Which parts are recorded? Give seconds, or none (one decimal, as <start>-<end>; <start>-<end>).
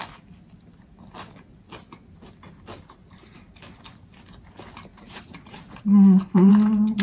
0.0-4.9; 6.5-7.0